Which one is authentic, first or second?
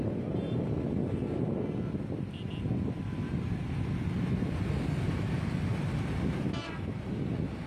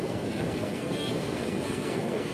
first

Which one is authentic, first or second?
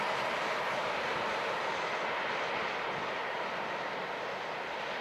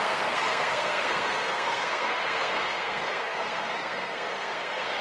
first